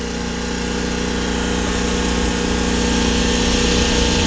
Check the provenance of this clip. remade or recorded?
recorded